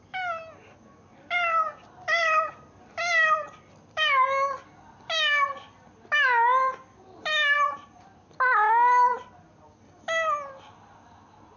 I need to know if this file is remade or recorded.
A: recorded